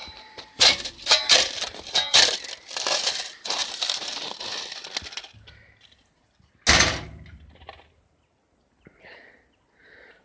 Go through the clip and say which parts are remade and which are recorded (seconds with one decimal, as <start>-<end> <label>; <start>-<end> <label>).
0.0-2.5 remade; 2.5-3.6 recorded; 3.6-4.4 remade; 4.4-10.2 recorded